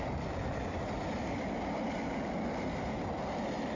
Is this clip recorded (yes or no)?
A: yes